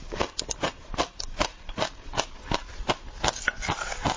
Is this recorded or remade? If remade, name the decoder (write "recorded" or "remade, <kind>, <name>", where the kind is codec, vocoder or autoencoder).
recorded